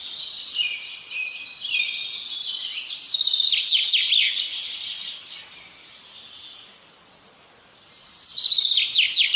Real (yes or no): yes